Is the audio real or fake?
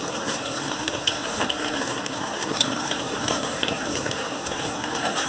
fake